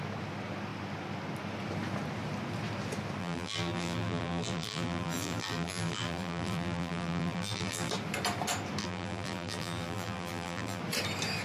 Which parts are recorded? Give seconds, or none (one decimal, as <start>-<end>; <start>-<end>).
0.0-3.2; 7.9-8.8; 10.8-11.4